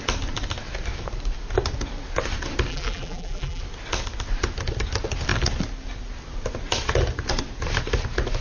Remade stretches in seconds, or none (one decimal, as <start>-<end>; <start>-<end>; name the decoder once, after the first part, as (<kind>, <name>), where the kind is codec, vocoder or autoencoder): 2.7-3.6 (vocoder, BigVGAN v2)